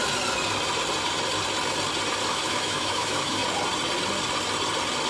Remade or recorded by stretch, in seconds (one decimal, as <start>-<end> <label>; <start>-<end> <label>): 0.0-2.3 recorded; 2.3-3.4 remade; 3.4-5.1 recorded